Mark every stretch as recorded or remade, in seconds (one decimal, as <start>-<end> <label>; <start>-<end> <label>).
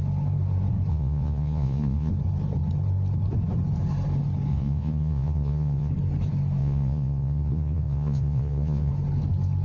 0.0-0.9 recorded; 0.9-2.1 remade; 2.1-4.5 recorded; 4.5-5.9 remade; 5.9-6.6 recorded; 6.6-8.9 remade; 8.9-9.6 recorded